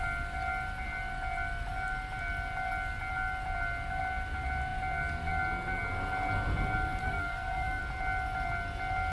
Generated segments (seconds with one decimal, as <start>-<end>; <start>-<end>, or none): 7.0-7.8